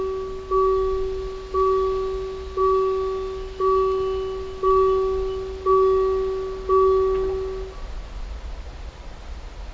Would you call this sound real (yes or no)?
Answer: yes